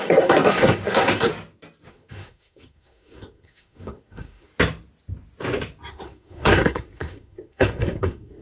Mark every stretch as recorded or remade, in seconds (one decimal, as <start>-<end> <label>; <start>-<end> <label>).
0.0-1.3 remade; 1.3-1.9 recorded; 1.9-4.5 remade; 4.5-5.9 recorded; 5.9-8.4 remade

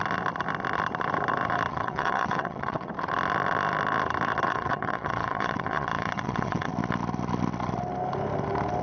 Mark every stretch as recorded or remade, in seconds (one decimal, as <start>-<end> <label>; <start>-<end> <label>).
0.0-1.7 recorded; 1.7-2.9 remade; 2.9-4.5 recorded; 4.5-6.7 remade; 6.7-8.8 recorded

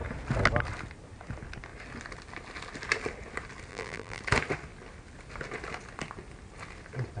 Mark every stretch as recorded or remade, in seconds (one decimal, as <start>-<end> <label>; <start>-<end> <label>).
0.0-3.7 recorded; 3.7-4.2 remade; 4.2-7.2 recorded

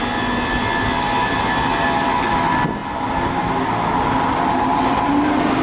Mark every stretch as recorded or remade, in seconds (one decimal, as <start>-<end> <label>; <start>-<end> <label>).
0.0-5.6 recorded